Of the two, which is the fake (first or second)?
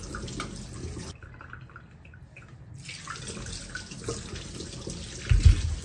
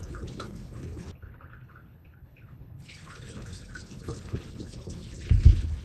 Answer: second